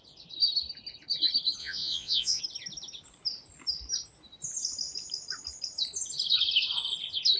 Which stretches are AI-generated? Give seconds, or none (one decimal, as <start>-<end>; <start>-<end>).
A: 1.6-2.4

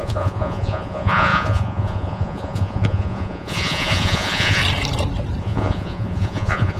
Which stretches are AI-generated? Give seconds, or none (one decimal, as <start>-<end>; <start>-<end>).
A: 0.0-4.6; 5.4-6.8

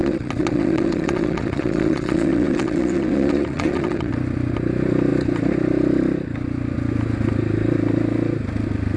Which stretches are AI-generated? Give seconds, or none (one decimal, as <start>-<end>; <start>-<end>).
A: 0.0-4.1

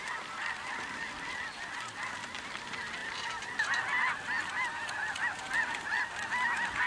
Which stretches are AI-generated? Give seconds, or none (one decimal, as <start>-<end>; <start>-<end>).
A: none